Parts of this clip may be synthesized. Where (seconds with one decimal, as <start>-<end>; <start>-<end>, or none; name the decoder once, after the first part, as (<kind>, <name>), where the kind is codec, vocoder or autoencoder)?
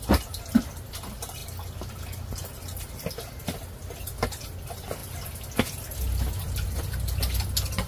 none